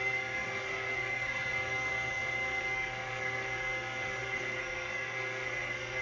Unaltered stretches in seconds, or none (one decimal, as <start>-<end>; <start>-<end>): none